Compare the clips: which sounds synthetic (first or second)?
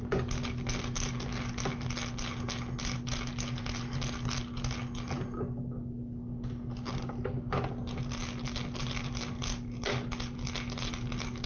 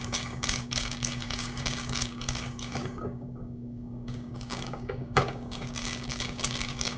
second